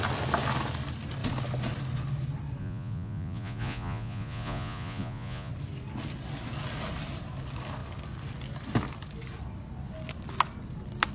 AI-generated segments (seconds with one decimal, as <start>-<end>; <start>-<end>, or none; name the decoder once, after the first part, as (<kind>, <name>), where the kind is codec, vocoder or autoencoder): 2.6-5.5 (vocoder, Vocos)